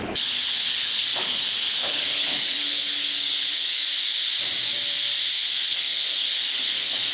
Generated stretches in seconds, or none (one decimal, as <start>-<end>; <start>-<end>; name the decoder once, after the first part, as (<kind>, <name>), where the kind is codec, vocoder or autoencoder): 0.0-3.8 (codec, HILCodec); 5.3-7.1